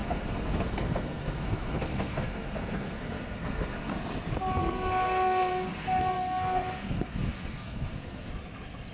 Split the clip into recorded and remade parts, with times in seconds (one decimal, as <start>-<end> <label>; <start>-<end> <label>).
0.0-3.9 remade; 3.9-4.6 recorded; 4.6-8.3 remade; 8.3-8.9 recorded